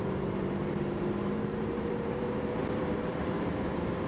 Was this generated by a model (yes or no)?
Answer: yes